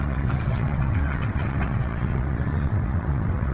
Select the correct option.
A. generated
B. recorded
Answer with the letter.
A